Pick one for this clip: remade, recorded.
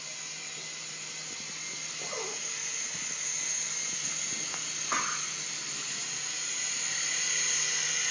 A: recorded